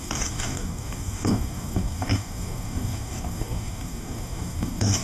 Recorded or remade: remade